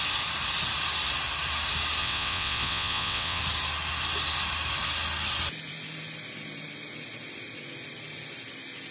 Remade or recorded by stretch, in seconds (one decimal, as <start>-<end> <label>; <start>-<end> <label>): 0.0-2.0 recorded; 2.0-3.4 remade; 3.4-8.9 recorded